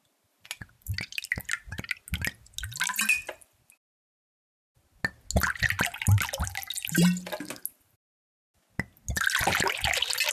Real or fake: real